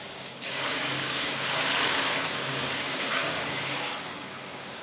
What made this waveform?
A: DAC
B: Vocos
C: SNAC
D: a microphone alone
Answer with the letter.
A